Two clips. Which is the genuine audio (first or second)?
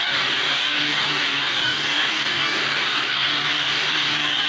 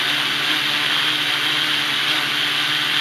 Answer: second